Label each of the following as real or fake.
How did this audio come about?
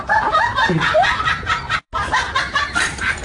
fake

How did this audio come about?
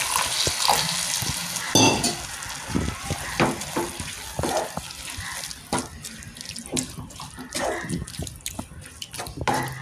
real